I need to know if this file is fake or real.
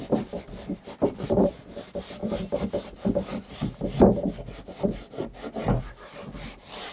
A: real